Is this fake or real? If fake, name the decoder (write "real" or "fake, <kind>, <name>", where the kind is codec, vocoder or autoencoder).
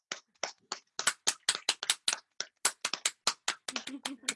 real